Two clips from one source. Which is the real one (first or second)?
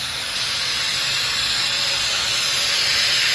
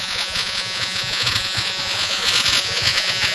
first